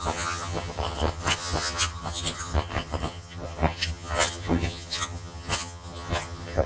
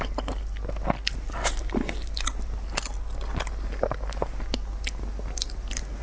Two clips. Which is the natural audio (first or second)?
second